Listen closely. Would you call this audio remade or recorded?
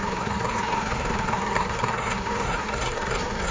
remade